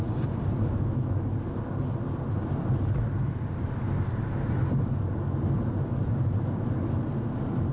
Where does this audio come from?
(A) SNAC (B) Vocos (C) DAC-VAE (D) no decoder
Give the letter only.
D